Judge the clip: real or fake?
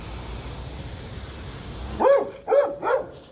real